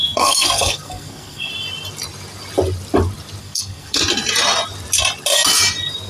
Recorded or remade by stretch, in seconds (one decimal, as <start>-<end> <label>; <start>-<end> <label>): 0.0-1.5 remade; 1.5-3.4 recorded; 3.4-4.0 remade; 4.0-6.1 recorded